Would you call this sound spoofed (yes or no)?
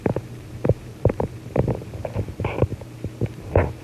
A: yes